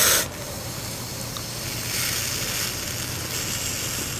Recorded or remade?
recorded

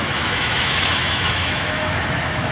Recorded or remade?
remade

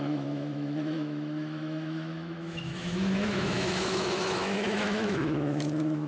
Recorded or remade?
remade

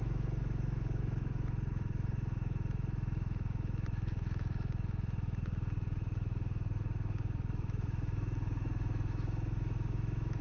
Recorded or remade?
remade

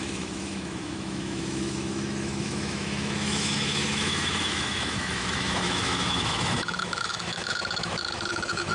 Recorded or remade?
remade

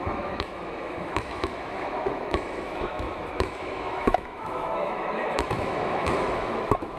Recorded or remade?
remade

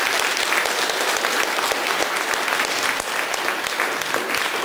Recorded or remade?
recorded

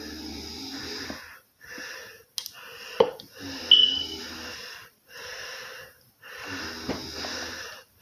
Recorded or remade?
recorded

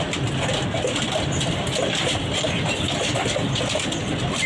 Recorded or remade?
recorded